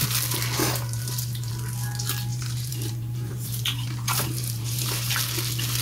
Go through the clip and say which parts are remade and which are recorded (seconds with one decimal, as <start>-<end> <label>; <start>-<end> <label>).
0.0-0.6 recorded; 0.6-1.5 remade; 1.5-2.3 recorded; 2.3-5.1 remade; 5.1-5.8 recorded